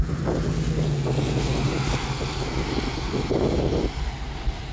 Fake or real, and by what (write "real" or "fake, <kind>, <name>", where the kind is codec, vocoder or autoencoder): real